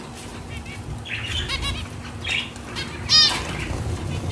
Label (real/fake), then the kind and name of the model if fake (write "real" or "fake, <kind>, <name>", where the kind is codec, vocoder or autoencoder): real